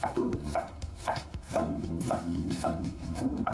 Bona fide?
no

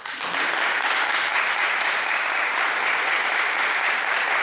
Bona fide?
no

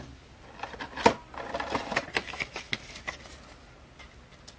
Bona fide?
yes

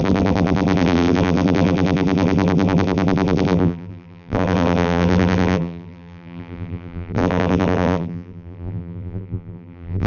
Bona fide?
no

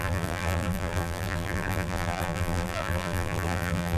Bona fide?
no